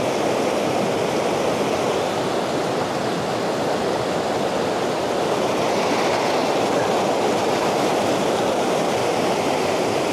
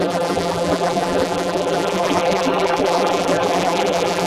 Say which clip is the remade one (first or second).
second